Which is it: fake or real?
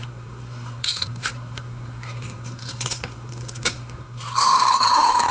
fake